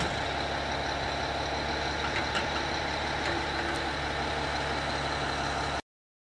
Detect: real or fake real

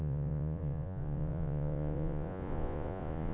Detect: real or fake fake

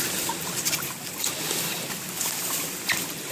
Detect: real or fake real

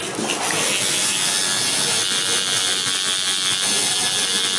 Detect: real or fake real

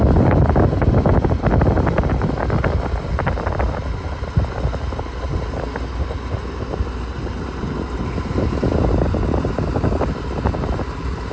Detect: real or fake real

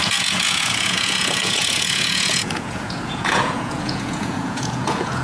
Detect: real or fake fake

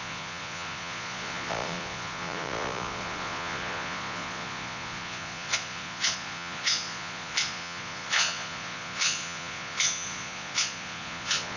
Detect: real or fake fake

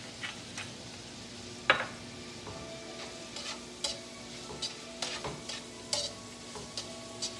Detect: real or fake real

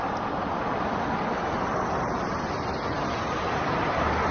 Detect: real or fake real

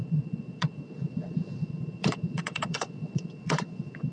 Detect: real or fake fake